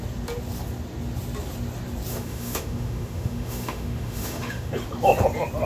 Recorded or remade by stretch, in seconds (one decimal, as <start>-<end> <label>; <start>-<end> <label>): 0.0-2.1 recorded; 2.1-4.7 remade; 4.7-5.7 recorded